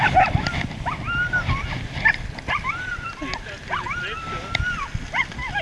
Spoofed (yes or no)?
no